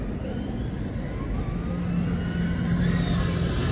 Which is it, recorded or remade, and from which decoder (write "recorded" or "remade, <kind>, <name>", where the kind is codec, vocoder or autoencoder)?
recorded